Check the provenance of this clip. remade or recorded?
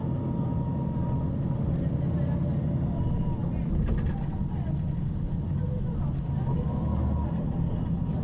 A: recorded